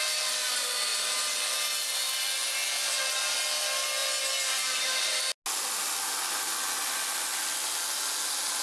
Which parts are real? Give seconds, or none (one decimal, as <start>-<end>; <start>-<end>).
0.0-4.0; 5.2-7.3; 7.8-8.6